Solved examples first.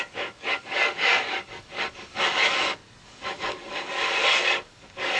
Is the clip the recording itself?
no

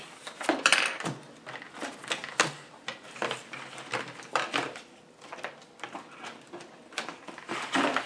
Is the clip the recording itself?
yes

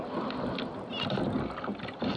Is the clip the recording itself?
yes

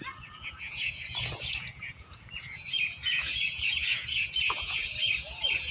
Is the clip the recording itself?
no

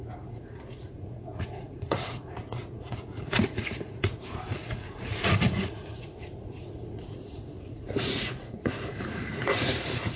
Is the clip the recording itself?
no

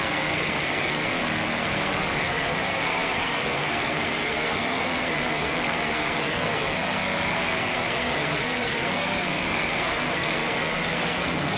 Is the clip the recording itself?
no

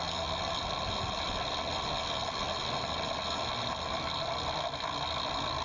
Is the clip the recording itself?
yes